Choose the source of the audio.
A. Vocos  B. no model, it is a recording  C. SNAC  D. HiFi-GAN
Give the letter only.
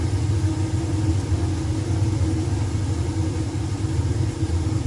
B